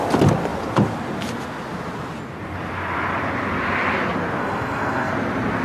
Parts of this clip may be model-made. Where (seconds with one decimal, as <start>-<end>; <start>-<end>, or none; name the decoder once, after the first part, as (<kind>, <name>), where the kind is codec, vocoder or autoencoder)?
4.4-5.1 (codec, SNAC)